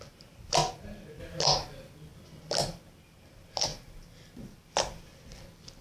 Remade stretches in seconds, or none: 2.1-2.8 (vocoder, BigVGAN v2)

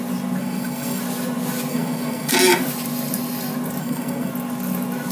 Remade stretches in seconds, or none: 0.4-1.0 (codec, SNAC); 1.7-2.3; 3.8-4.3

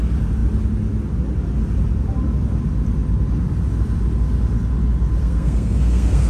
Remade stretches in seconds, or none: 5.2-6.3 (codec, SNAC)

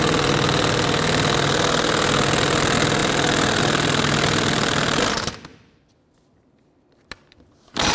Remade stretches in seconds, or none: 3.0-3.6 (vocoder, BigVGAN v2)

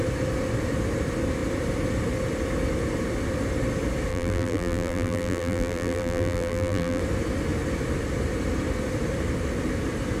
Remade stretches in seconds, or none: 4.1-7.0 (vocoder, BigVGAN v2)

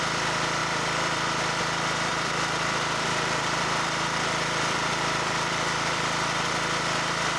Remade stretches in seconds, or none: 0.6-1.6 (vocoder, BigVGAN v2); 2.1-6.5